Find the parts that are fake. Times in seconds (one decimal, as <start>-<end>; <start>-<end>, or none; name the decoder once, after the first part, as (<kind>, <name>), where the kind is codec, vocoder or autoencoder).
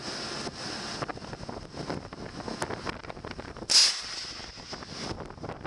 none